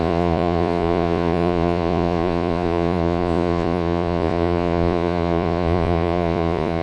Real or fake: fake